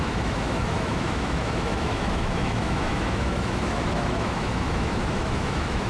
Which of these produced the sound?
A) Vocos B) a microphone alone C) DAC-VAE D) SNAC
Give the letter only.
C